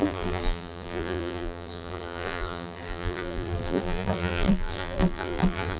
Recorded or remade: remade